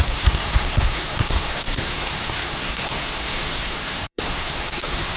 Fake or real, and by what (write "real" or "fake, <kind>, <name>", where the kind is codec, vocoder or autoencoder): fake, codec, SNAC